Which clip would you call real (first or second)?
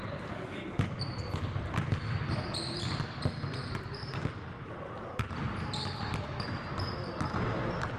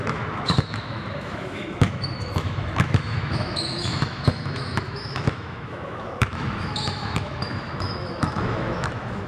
first